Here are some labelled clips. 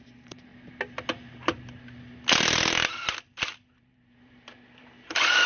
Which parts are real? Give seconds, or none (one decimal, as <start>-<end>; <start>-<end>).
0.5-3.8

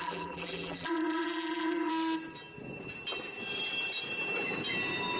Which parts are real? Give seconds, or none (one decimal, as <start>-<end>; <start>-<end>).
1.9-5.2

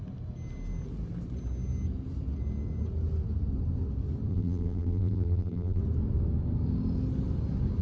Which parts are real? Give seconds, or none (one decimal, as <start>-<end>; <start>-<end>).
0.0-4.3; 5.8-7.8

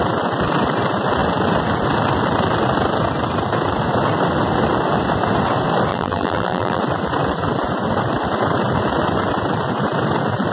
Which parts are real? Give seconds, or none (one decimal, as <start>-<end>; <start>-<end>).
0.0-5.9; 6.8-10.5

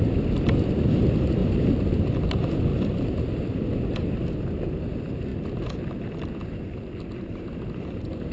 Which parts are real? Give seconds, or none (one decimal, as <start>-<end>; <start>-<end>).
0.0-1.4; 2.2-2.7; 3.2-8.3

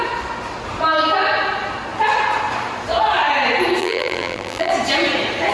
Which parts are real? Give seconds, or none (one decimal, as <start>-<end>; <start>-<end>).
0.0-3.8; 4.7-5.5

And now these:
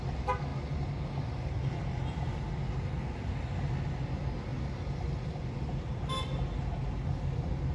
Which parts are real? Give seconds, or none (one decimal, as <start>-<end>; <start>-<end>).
0.0-7.7